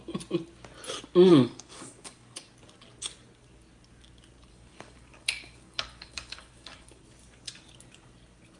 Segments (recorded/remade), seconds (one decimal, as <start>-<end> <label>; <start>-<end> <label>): 0.0-1.3 recorded; 1.3-2.5 remade; 2.5-4.5 recorded; 4.5-7.0 remade; 7.0-8.6 recorded